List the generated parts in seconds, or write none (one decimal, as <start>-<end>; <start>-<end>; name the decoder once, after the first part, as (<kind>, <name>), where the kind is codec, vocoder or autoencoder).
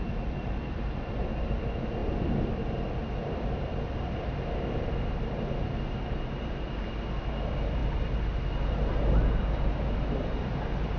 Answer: none